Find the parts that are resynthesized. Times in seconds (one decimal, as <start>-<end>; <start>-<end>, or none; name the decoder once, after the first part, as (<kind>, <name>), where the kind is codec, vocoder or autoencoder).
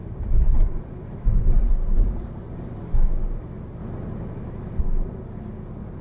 0.0-2.5 (vocoder, BigVGAN v2)